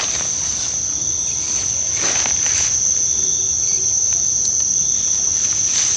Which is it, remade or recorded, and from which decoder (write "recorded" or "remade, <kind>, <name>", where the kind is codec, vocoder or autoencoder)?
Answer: recorded